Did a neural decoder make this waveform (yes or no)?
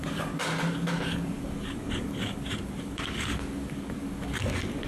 yes